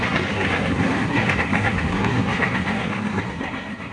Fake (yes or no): yes